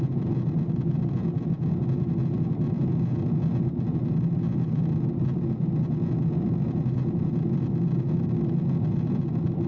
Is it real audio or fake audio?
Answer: real